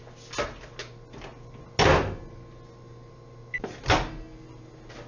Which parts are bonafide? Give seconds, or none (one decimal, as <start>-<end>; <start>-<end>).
0.0-5.1